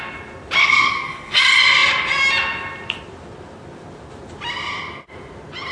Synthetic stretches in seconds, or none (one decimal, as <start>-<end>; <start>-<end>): 0.6-1.4